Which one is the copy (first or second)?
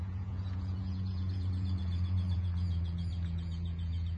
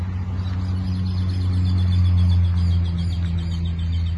first